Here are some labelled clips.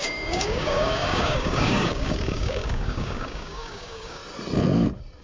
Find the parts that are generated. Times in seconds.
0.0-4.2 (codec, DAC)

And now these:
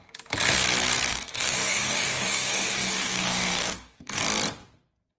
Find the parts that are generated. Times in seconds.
1.1-4.2 (codec, DAC)

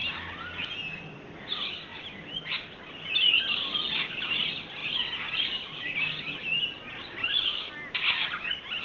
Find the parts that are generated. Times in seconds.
7.2-7.7 (codec, DAC)